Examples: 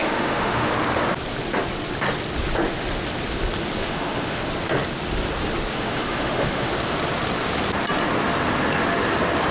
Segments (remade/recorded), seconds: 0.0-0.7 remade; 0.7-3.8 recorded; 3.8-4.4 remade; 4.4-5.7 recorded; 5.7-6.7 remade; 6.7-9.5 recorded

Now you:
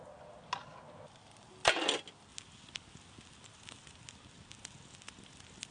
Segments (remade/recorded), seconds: 0.0-5.7 recorded

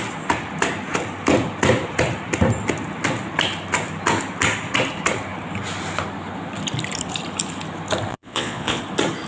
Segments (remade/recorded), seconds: 0.0-8.1 recorded; 8.1-8.8 remade; 8.8-9.3 recorded